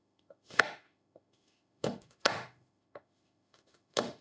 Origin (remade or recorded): remade